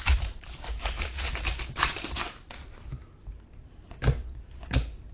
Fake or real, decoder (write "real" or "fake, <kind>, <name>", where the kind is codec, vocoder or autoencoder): fake, vocoder, BigVGAN v2